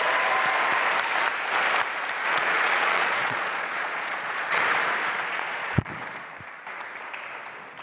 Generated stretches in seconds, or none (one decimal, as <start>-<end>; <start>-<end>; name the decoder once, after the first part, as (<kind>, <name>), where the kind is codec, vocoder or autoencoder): 2.3-4.6 (vocoder, Vocos); 5.3-5.9